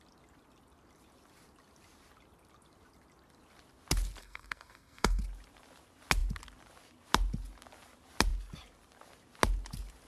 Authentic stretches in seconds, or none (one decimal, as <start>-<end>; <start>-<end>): 0.0-4.2; 5.2-10.1